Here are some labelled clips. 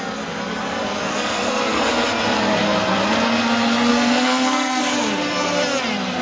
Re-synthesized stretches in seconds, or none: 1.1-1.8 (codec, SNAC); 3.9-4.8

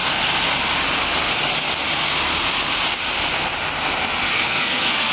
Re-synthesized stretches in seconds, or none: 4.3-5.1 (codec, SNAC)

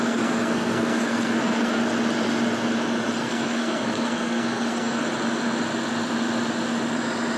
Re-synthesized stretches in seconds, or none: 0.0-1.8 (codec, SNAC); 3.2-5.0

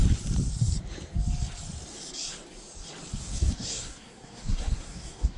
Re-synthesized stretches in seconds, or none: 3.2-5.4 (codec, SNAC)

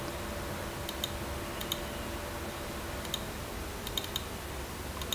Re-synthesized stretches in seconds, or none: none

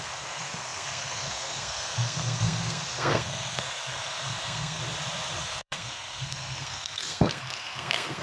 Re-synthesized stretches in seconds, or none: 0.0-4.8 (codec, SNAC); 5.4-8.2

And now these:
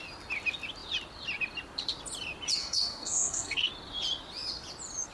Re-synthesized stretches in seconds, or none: 2.6-3.7 (codec, SNAC)